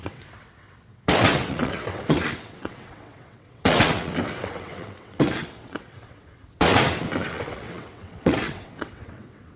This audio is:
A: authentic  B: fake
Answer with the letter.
B